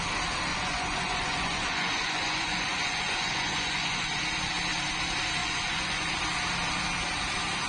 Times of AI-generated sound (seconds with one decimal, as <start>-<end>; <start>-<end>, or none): 0.5-4.2; 5.4-6.1